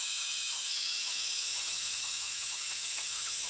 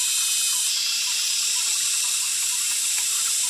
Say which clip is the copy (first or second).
first